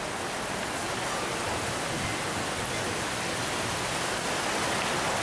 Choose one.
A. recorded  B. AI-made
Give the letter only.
A